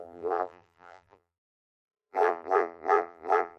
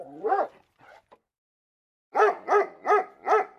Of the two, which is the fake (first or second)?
first